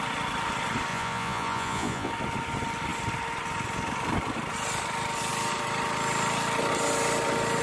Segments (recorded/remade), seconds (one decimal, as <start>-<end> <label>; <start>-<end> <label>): 0.0-0.9 recorded; 0.9-2.1 remade; 2.1-7.6 recorded